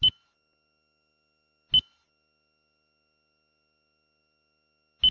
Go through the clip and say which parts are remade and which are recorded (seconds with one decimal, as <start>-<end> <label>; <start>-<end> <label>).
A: 0.0-5.1 recorded